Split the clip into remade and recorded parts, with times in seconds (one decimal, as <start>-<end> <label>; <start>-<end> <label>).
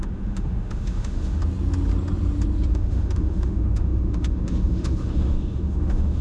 0.0-1.4 remade; 1.4-2.7 recorded; 2.7-6.2 remade